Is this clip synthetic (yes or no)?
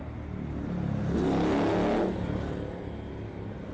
no